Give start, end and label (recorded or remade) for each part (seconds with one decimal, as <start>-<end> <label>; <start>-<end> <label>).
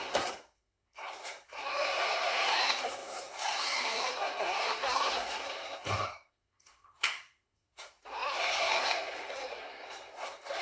0.0-10.6 remade